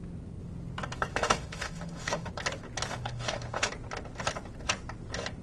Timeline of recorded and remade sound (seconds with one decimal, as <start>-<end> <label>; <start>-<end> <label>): 0.0-1.1 recorded; 1.1-2.3 remade; 2.3-2.9 recorded; 2.9-3.7 remade; 3.7-5.4 recorded